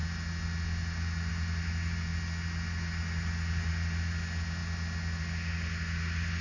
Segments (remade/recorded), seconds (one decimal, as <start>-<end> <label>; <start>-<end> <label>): 0.0-6.4 recorded